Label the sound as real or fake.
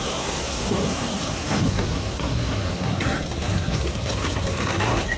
fake